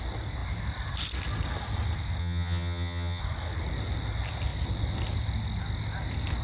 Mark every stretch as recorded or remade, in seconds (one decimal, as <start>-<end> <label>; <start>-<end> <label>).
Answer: 0.0-2.2 recorded; 2.2-3.2 remade; 3.2-6.4 recorded